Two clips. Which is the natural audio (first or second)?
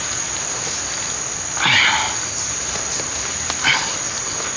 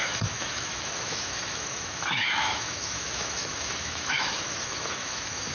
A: first